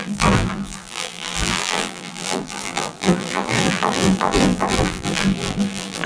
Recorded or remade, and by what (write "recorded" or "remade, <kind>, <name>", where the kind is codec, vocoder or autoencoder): remade, vocoder, BigVGAN v2